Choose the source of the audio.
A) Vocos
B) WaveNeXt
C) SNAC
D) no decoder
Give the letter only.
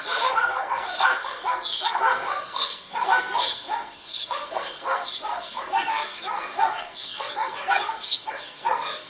C